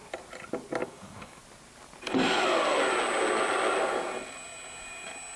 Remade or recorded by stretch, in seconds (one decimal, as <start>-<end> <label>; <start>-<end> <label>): 0.0-0.8 recorded; 0.8-1.4 remade; 1.4-5.4 recorded